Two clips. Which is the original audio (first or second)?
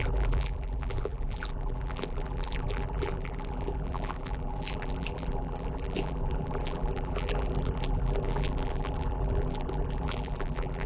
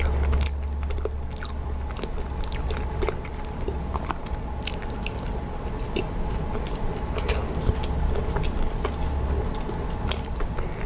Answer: second